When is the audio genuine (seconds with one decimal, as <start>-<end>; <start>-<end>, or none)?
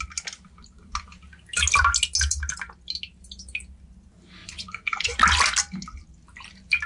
0.0-4.4; 5.2-6.9